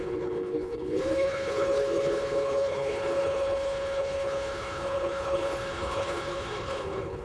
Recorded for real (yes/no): no